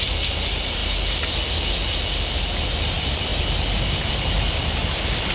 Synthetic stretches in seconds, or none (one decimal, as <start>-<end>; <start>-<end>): none